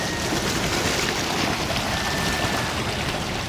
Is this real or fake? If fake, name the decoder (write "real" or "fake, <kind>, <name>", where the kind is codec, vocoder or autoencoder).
real